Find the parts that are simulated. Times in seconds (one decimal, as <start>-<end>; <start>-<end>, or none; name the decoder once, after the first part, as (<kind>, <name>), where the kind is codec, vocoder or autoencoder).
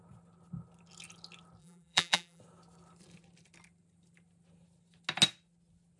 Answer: 1.6-2.4 (vocoder, BigVGAN v2)